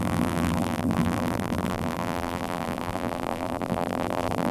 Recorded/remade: remade